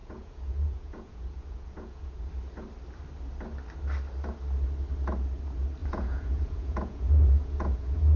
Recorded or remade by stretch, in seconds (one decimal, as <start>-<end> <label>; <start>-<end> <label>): 0.0-2.3 remade; 2.3-5.8 recorded; 5.8-8.2 remade